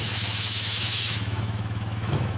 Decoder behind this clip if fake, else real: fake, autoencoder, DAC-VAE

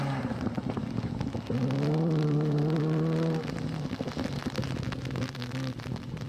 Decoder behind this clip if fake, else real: real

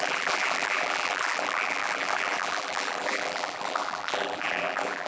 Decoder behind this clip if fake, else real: fake, vocoder, BigVGAN v2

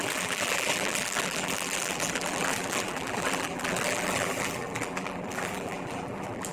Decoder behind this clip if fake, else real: fake, vocoder, BigVGAN v2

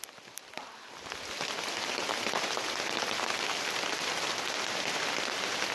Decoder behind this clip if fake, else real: real